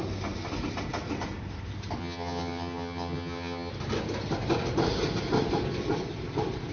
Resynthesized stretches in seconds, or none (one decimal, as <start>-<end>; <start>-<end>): 2.0-3.7